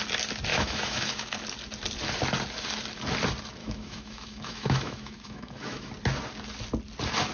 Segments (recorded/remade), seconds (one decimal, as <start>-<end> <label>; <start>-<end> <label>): 0.0-0.5 recorded; 0.5-1.4 remade; 1.4-3.6 recorded; 3.6-5.9 remade; 5.9-7.3 recorded